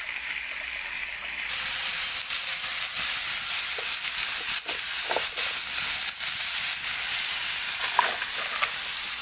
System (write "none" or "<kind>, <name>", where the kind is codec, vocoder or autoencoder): none